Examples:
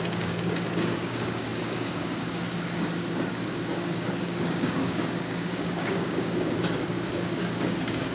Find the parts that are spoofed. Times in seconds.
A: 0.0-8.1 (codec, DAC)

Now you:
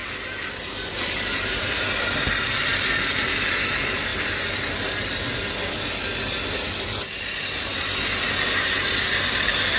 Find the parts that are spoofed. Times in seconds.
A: none

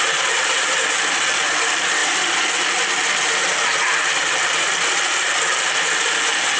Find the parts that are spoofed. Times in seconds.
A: none